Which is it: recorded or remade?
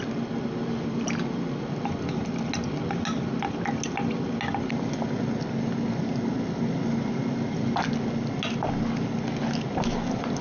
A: recorded